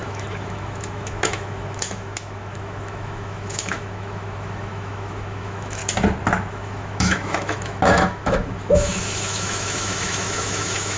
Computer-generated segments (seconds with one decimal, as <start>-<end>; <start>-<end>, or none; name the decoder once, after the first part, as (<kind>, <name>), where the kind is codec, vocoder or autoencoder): 0.0-5.8 (autoencoder, DAC-VAE); 6.5-11.0